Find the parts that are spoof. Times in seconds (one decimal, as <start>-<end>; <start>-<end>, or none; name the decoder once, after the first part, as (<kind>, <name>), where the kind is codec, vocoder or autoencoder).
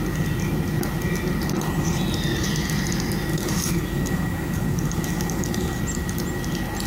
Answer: 3.3-5.8 (codec, DAC)